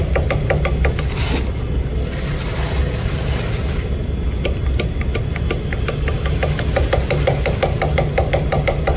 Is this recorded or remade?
recorded